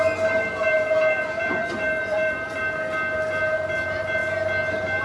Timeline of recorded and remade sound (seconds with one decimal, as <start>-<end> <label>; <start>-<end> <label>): 0.0-1.6 recorded; 1.6-2.6 remade; 2.6-5.0 recorded